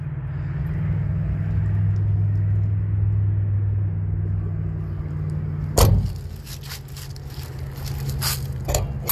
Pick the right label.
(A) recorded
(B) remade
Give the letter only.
A